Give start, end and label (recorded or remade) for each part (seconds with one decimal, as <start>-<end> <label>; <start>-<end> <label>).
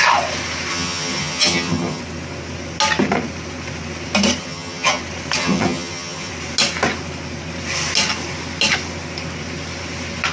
0.0-0.7 recorded; 0.7-2.0 remade; 2.0-4.4 recorded; 4.4-5.0 remade; 5.0-5.4 recorded; 5.4-6.3 remade; 6.3-10.3 recorded